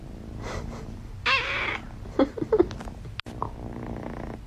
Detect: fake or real real